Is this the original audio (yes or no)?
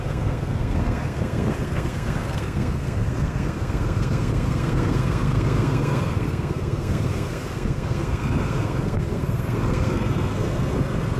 no